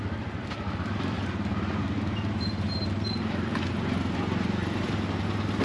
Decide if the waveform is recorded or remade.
recorded